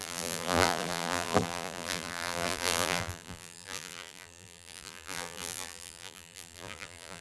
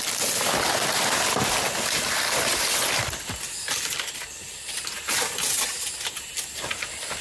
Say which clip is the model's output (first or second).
first